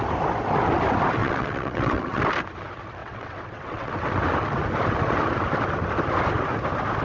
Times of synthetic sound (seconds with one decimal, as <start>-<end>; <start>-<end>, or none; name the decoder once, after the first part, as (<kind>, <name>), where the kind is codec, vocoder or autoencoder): 1.2-2.2 (vocoder, WaveNeXt); 3.0-3.9